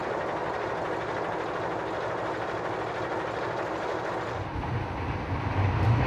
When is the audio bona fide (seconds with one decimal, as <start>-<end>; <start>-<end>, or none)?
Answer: 0.0-6.1